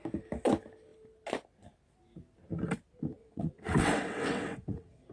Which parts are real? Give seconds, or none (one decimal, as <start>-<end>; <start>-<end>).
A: 0.0-3.2